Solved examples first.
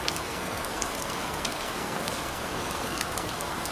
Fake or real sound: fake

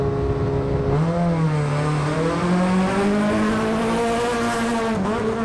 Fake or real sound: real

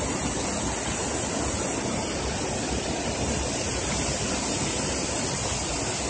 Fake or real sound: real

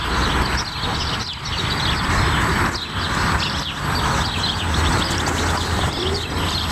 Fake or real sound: real